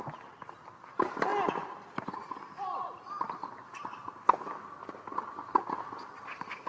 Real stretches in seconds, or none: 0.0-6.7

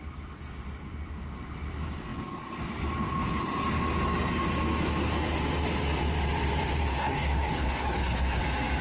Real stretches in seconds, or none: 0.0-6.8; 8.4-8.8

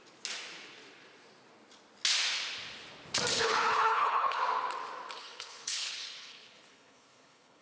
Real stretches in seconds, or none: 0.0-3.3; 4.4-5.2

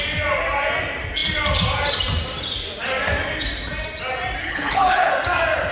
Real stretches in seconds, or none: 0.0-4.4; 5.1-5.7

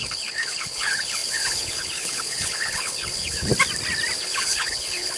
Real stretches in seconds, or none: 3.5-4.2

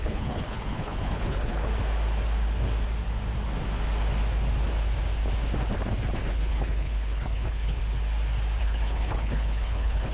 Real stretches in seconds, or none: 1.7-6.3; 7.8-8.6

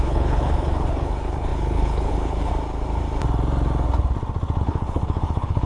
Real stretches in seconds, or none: 2.5-4.6